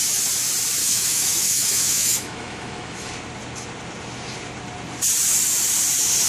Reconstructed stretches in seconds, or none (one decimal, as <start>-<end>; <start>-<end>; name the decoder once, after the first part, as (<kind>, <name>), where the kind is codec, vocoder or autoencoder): 0.8-3.1 (autoencoder, DAC-VAE)